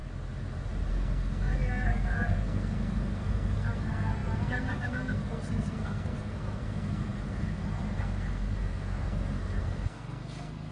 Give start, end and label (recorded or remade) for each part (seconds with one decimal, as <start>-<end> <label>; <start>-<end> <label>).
0.0-0.9 recorded; 0.9-10.7 remade